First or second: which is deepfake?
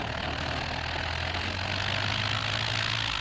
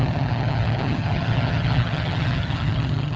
second